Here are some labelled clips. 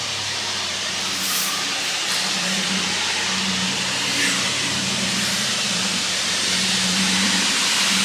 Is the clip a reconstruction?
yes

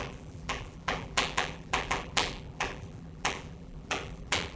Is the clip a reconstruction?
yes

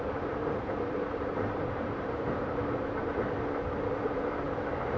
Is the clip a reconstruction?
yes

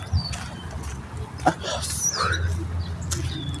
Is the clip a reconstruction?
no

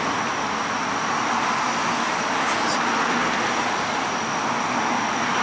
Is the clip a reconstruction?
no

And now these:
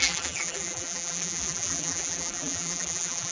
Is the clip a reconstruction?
yes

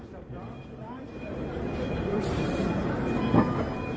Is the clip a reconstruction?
yes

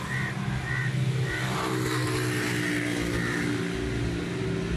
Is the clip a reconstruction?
no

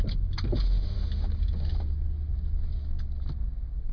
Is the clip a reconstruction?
no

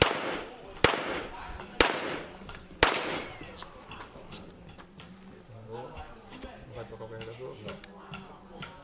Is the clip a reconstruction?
no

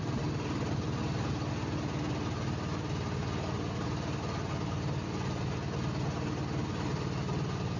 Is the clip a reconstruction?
no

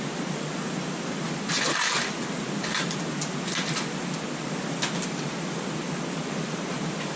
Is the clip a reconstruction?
no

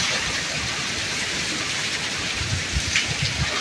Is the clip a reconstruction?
yes